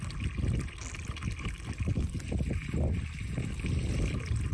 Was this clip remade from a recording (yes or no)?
no